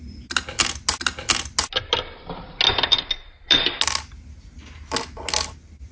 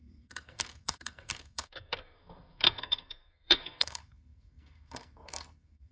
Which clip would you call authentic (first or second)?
first